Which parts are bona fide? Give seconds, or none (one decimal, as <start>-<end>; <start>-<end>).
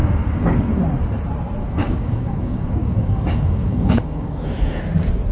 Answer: 0.8-1.6; 4.8-5.3